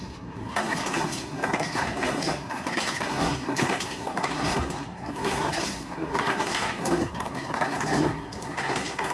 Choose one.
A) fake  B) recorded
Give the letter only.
A